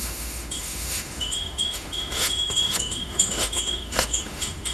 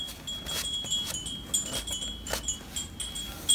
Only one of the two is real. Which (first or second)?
second